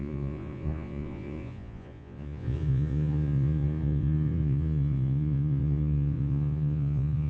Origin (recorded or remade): remade